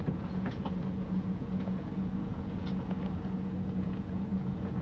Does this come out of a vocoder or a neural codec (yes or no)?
yes